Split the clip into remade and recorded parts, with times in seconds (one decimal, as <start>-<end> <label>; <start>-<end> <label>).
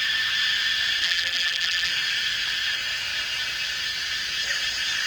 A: 0.0-1.0 recorded; 1.0-1.9 remade; 1.9-5.1 recorded